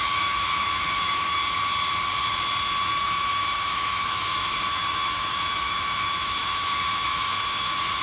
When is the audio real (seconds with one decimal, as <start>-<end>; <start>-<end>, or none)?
1.4-2.8